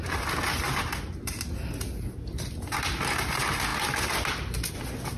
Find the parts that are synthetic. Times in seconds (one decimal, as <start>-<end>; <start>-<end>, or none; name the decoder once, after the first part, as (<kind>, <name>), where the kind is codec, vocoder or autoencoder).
none